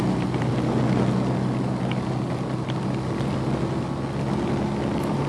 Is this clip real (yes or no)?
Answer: yes